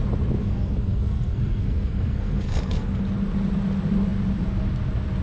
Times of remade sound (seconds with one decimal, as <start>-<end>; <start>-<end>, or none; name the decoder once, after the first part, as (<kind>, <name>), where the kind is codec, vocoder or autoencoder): 0.4-3.0 (codec, SNAC)